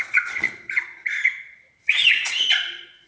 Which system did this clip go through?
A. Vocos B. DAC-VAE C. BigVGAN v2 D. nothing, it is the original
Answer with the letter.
A